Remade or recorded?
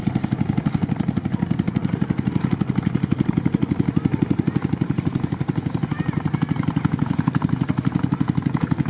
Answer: recorded